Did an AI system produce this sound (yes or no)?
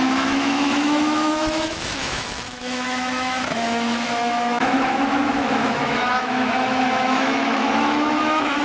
yes